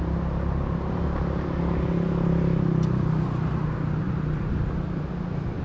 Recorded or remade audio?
recorded